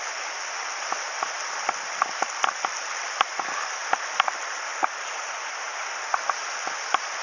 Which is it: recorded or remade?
recorded